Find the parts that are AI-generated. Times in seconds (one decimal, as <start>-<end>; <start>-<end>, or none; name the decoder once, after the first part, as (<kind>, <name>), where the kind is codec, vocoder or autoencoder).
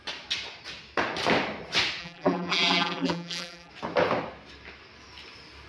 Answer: 2.0-3.7 (vocoder, BigVGAN v2)